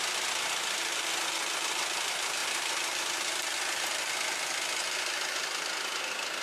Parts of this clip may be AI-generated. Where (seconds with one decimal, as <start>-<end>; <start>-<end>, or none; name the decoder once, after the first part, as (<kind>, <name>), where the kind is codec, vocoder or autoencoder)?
none